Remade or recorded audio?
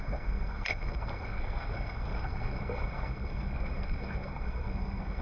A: remade